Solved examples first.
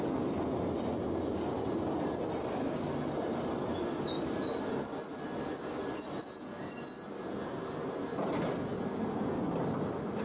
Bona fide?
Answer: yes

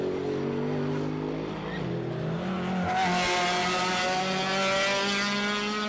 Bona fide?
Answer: yes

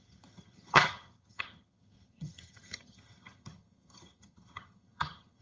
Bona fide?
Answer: no